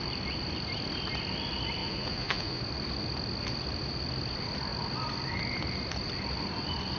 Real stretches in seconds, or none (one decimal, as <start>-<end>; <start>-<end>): 0.0-1.8; 2.6-7.0